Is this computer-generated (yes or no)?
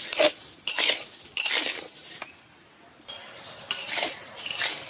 yes